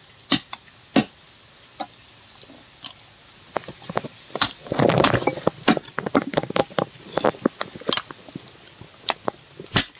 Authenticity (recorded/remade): recorded